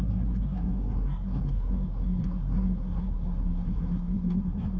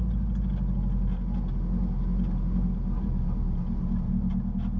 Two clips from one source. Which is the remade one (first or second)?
first